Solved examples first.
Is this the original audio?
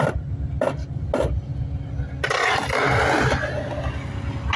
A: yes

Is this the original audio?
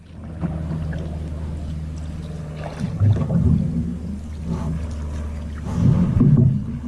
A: yes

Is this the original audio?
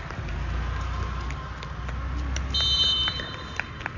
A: yes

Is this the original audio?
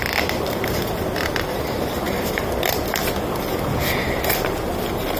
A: yes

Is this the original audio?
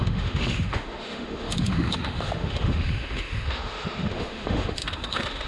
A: no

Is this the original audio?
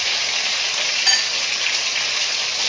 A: yes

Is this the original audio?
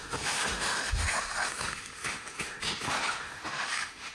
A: no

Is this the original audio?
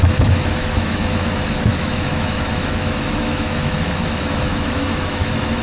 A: no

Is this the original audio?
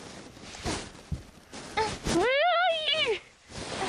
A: yes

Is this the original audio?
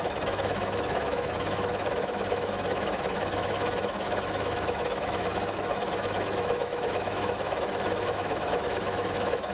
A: no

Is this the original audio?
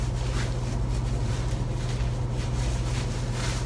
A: yes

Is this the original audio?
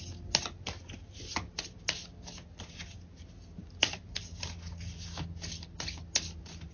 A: yes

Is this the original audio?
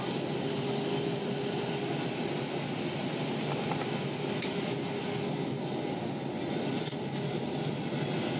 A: yes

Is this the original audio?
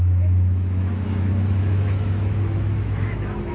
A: no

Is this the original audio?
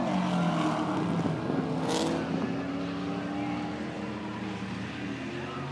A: yes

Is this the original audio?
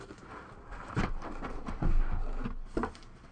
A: yes